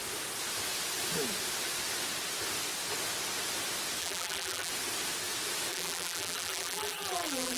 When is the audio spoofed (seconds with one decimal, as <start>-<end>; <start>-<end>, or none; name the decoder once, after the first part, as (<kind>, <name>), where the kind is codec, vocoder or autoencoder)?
4.0-4.7 (vocoder, BigVGAN v2); 5.7-7.6